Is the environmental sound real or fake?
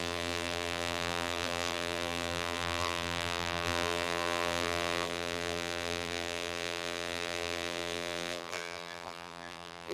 fake